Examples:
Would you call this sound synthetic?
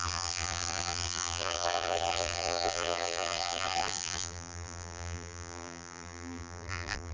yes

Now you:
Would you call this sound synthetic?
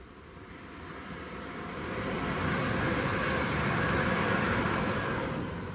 no